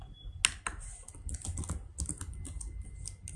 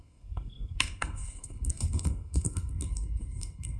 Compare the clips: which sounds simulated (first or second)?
second